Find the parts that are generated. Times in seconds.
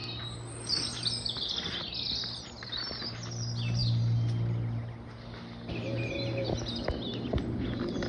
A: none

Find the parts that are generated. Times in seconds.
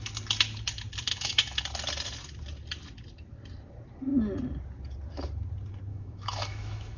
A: 1.1-1.6 (autoencoder, DAC-VAE); 5.9-7.0